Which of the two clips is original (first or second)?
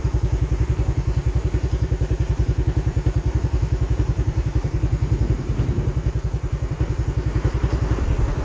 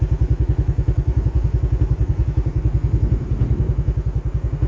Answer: second